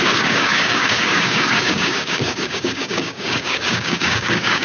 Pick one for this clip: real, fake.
fake